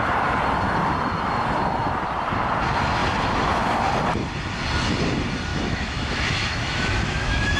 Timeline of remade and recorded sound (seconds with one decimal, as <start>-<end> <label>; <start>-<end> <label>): 0.0-5.5 recorded; 5.5-7.6 remade